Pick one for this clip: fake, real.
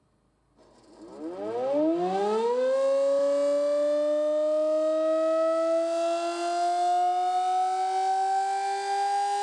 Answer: real